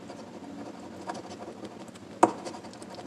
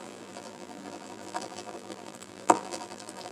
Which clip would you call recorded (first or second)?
first